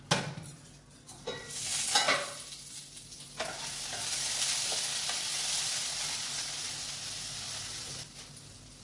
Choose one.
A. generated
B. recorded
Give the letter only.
B